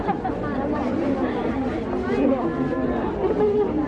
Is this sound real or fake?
real